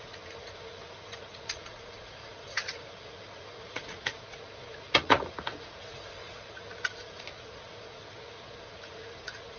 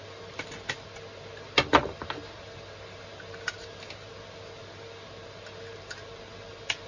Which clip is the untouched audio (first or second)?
second